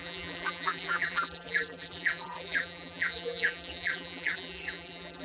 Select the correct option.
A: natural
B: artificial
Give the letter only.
B